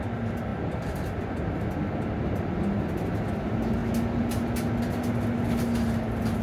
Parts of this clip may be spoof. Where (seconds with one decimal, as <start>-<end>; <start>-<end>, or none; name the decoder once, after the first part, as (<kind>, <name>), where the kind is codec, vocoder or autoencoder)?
none